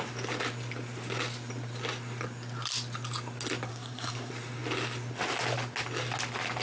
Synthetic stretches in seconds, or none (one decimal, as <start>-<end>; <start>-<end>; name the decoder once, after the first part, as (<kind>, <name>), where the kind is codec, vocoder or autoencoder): 3.7-4.3 (codec, SNAC)